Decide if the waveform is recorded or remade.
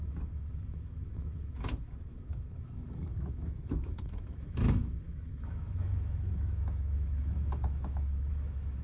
remade